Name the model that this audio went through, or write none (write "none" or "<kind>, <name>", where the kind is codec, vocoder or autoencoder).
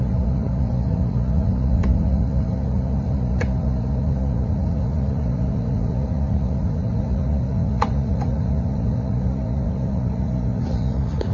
vocoder, Vocos